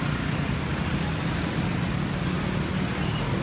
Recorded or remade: recorded